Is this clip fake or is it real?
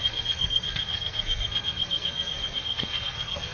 fake